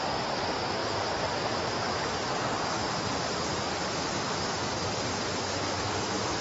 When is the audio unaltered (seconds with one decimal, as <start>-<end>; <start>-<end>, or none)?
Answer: 0.0-6.4